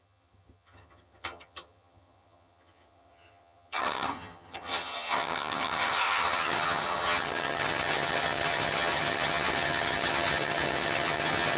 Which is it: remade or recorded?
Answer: remade